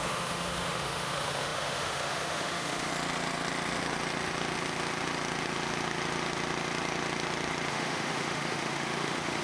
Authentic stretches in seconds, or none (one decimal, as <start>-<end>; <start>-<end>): 2.9-7.7